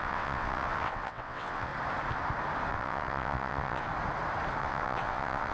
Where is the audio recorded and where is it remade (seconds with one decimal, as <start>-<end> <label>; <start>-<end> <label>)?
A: 0.0-1.7 remade; 1.7-2.7 recorded; 2.7-3.9 remade; 3.9-4.6 recorded; 4.6-5.5 remade